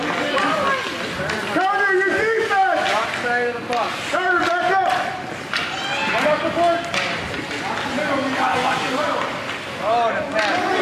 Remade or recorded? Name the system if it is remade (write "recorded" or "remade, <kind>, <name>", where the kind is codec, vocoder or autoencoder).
recorded